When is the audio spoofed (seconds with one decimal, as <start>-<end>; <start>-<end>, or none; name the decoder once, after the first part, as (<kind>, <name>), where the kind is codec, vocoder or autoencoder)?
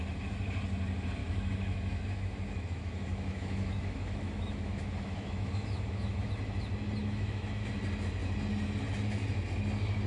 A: 1.2-6.3 (autoencoder, DAC-VAE); 7.0-7.7